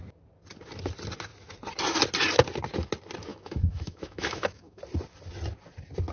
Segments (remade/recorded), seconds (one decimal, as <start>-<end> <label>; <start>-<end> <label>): 0.0-3.3 recorded; 3.3-4.8 remade; 4.8-6.1 recorded